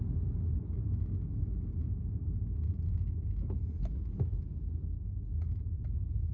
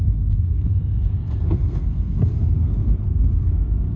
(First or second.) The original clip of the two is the first